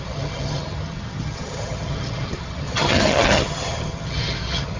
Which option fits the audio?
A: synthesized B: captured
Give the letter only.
A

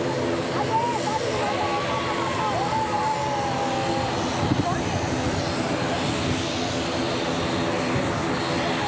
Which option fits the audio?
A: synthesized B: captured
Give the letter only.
B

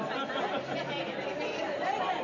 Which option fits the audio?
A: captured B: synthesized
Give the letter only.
A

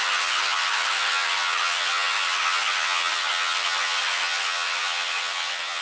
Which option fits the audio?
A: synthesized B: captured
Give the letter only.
A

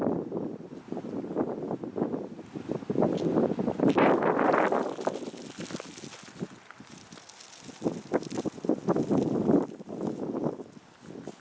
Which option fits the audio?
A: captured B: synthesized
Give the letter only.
A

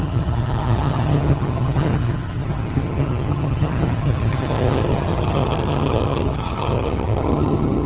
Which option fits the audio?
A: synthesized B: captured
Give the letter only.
A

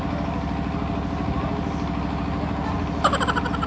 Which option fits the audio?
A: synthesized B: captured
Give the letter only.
B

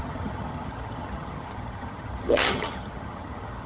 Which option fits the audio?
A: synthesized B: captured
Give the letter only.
A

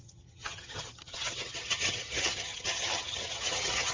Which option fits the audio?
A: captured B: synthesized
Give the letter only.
B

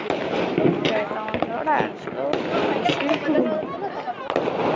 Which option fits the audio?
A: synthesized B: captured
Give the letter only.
B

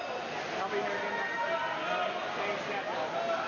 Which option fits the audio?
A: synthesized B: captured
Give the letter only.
B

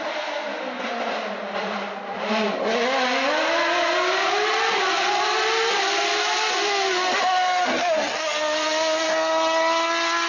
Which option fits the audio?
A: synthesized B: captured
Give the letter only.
B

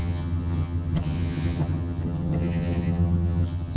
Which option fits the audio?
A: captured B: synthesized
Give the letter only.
B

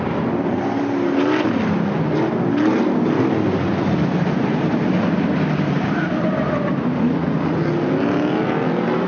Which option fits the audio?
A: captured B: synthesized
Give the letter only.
A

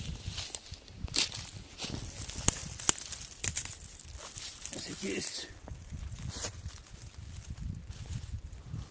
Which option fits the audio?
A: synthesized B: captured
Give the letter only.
B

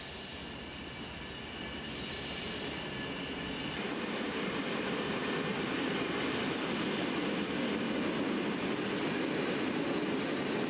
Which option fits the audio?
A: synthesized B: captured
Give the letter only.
B